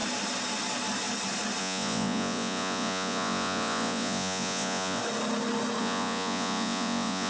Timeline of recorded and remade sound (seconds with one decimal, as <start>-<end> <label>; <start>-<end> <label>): 0.0-1.6 recorded; 1.6-5.0 remade; 5.0-5.8 recorded; 5.8-7.3 remade